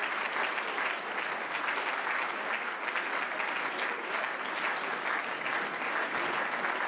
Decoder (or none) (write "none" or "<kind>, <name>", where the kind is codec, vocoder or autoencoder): none